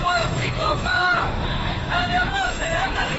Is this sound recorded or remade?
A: remade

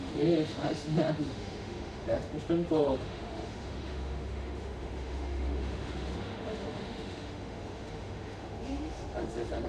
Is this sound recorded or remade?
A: remade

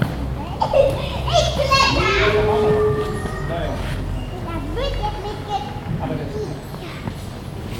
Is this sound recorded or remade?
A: recorded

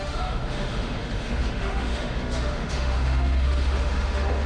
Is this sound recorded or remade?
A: remade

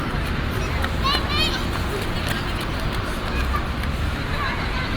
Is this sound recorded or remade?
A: recorded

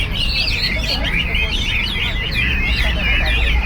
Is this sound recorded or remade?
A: recorded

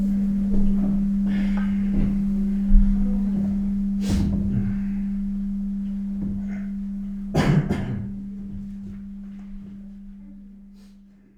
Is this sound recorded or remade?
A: recorded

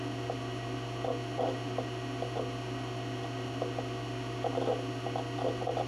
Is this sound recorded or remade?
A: recorded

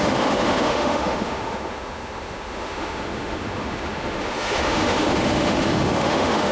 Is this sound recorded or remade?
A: remade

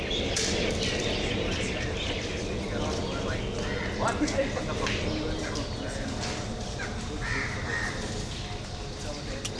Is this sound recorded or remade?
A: recorded